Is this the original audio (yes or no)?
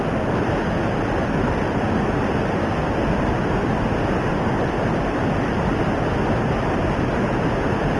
yes